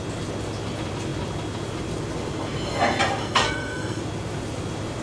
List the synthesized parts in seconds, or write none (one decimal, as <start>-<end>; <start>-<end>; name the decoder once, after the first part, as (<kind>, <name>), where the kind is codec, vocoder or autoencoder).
3.2-4.0 (codec, SNAC)